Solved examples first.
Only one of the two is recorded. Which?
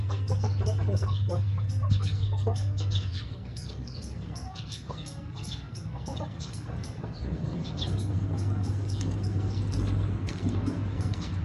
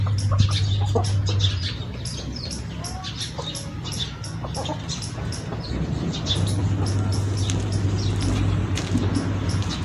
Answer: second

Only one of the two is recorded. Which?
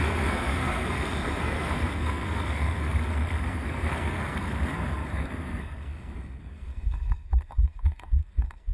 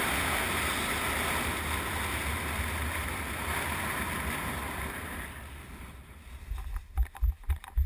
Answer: second